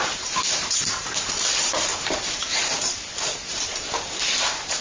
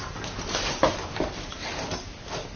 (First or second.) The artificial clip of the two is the first